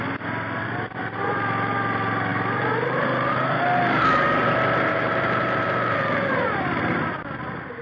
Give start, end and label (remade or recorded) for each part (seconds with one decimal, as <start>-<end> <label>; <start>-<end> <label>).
0.0-2.3 recorded; 2.3-3.6 remade; 3.6-4.9 recorded; 4.9-6.3 remade; 6.3-7.8 recorded